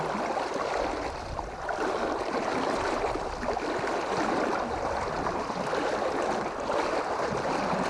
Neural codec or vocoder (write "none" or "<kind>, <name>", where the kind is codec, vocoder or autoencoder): none